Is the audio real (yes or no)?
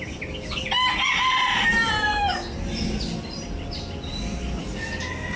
yes